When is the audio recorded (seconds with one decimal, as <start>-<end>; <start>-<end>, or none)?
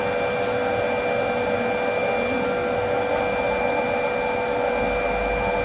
0.0-5.6